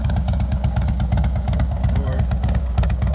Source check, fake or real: fake